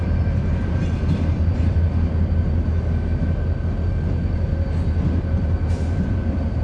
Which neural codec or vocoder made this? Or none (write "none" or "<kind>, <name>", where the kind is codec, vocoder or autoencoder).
none